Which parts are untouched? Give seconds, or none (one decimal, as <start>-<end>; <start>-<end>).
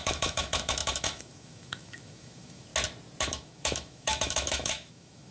2.7-3.2